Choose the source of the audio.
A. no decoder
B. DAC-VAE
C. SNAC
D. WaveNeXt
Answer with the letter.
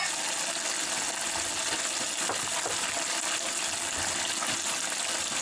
A